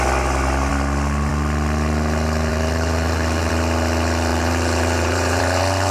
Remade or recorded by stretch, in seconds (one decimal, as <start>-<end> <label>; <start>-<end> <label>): 0.0-2.5 recorded; 2.5-3.5 remade; 3.5-4.3 recorded; 4.3-5.4 remade; 5.4-5.9 recorded